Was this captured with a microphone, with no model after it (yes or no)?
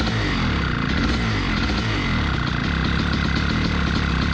yes